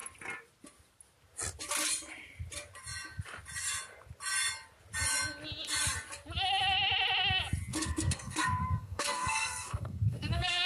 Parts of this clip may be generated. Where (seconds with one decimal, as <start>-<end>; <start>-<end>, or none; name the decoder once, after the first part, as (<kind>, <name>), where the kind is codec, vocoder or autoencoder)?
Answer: 7.7-10.7 (codec, SNAC)